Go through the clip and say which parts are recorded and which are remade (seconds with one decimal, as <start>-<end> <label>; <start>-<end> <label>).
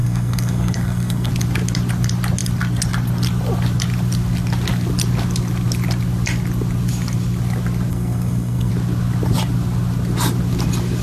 0.0-1.3 remade; 1.3-7.9 recorded; 7.9-8.7 remade; 8.7-11.0 recorded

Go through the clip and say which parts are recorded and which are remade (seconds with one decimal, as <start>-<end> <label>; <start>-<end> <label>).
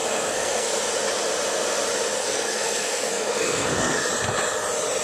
0.0-0.8 remade; 0.8-2.2 recorded; 2.2-4.1 remade; 4.1-5.0 recorded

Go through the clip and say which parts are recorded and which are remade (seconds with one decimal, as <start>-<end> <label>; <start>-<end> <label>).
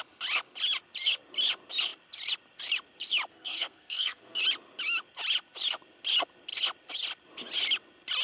0.0-3.3 recorded; 3.3-4.4 remade; 4.4-8.2 recorded